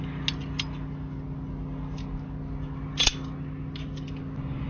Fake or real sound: real